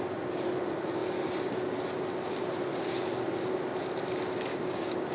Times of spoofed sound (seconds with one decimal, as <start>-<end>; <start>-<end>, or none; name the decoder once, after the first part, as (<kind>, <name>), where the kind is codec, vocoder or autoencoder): 4.5-5.1 (codec, DAC)